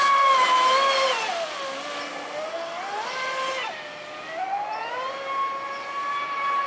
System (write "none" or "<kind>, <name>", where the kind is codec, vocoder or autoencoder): none